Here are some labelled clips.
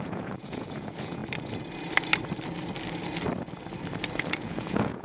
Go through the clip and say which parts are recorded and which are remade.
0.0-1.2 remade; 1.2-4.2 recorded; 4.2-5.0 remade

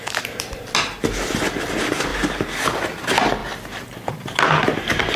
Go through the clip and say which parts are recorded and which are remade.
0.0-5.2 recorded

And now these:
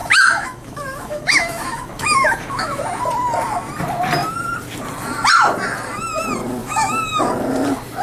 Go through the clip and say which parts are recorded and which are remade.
0.0-2.8 remade; 2.8-6.6 recorded; 6.6-7.2 remade; 7.2-8.0 recorded

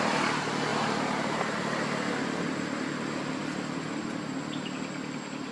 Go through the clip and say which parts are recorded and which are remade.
0.0-5.5 recorded

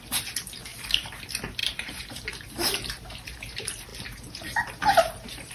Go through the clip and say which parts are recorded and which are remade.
0.0-0.7 recorded; 0.7-1.2 remade; 1.2-1.6 recorded; 1.6-2.3 remade; 2.3-5.5 recorded